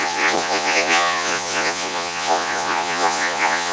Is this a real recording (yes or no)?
no